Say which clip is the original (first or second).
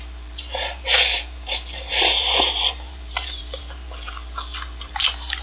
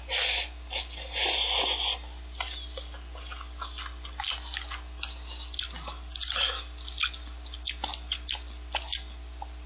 second